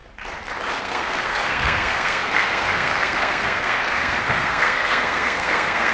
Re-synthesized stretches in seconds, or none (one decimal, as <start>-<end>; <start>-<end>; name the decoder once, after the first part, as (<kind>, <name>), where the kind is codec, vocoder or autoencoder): 0.8-5.9 (codec, SNAC)

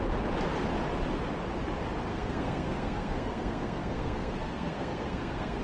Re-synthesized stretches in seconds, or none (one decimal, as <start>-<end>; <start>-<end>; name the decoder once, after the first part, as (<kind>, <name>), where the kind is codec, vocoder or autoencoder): 2.1-5.6 (codec, SNAC)

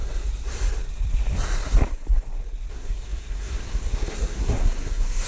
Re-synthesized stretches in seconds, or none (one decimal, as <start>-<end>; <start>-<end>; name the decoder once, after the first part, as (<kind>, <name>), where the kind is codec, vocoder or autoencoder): 2.7-5.3 (codec, SNAC)